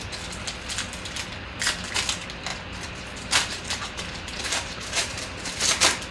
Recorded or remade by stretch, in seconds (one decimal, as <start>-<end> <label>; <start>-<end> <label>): 0.0-2.5 recorded; 2.5-5.2 remade; 5.2-6.1 recorded